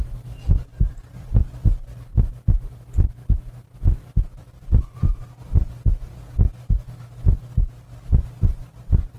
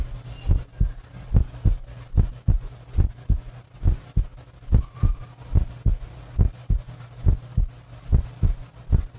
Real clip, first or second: second